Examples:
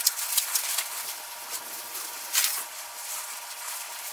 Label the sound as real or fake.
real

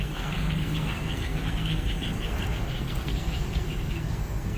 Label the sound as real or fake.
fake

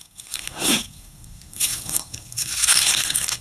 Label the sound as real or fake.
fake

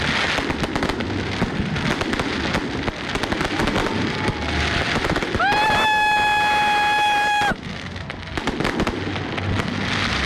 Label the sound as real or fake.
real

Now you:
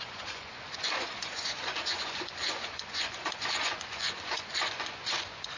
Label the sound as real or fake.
fake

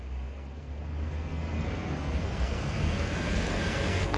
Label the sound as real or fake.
fake